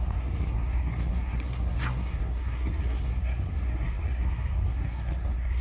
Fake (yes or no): yes